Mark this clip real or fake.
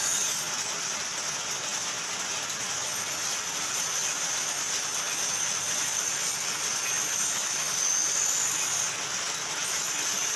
real